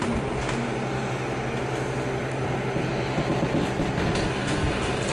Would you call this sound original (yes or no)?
yes